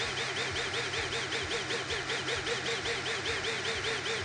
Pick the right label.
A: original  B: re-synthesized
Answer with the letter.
A